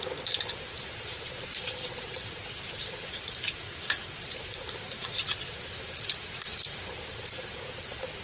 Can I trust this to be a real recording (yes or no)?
no